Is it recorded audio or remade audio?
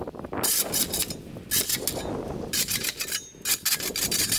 recorded